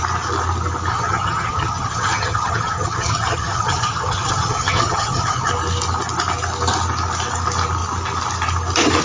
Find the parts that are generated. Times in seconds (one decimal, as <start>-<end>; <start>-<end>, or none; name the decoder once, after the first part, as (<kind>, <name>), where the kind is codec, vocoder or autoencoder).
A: 0.9-5.5 (vocoder, HiFi-GAN)